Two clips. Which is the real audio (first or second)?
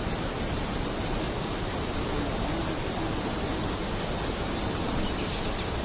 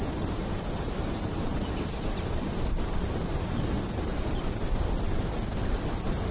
first